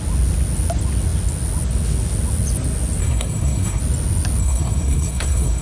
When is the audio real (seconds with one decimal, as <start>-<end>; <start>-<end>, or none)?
0.0-3.0; 3.8-4.4